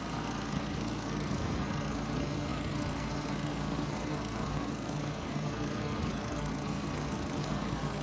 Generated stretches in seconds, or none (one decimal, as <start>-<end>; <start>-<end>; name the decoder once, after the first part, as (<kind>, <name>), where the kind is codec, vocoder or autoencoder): 0.0-8.0 (codec, SNAC)